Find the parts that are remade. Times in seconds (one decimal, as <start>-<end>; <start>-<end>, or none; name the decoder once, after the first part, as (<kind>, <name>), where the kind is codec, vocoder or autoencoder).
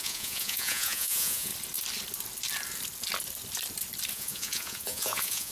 0.0-1.5 (vocoder, Vocos); 4.1-5.5